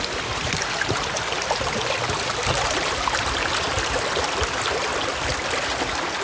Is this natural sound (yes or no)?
no